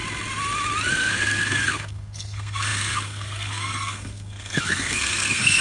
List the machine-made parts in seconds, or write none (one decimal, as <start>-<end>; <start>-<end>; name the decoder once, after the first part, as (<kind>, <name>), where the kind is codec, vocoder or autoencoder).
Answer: 0.9-5.6 (codec, SNAC)